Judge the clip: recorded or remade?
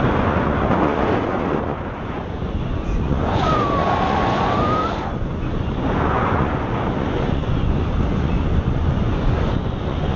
remade